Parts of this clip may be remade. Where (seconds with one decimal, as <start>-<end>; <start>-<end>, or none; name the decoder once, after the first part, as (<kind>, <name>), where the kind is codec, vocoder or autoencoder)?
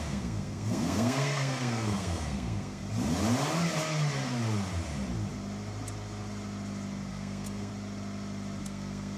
0.0-2.8 (codec, SNAC); 7.1-7.7; 8.6-9.2